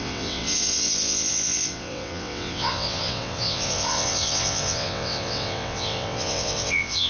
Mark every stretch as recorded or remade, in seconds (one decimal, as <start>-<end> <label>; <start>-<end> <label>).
0.0-7.1 remade